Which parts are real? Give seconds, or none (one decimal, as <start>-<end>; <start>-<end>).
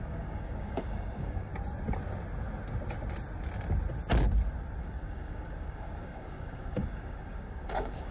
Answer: 1.5-4.8